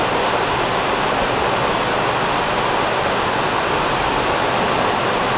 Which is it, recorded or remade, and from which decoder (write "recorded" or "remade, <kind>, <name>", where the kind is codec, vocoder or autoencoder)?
recorded